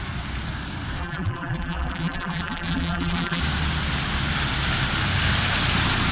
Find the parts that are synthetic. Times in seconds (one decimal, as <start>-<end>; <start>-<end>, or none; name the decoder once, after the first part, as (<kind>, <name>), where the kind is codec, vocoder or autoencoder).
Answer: 1.0-3.4 (vocoder, BigVGAN v2)